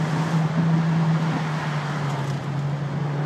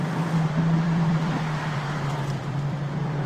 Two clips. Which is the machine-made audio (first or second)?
second